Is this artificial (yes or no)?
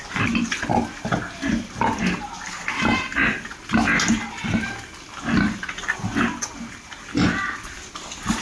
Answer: no